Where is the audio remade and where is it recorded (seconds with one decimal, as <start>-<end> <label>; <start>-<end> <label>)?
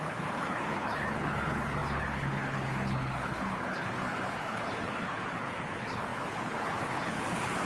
0.0-7.7 remade